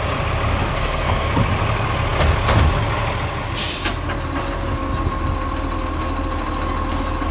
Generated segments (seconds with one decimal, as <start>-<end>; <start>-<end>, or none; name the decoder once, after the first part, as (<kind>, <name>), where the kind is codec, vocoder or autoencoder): 0.6-1.3 (codec, SNAC)